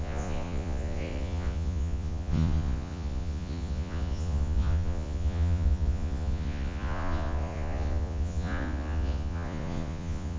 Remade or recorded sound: remade